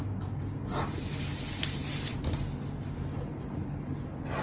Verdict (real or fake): real